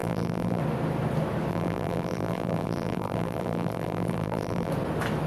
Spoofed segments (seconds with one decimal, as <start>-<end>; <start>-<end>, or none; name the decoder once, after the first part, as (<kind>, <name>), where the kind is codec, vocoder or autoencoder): 0.0-0.6 (vocoder, BigVGAN v2); 1.5-4.7